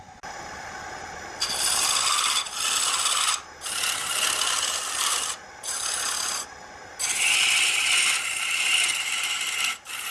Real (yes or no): yes